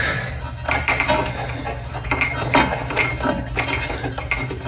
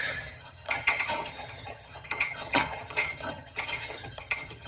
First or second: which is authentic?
first